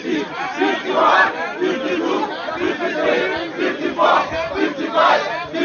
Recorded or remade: recorded